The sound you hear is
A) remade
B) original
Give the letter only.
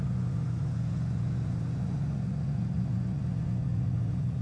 A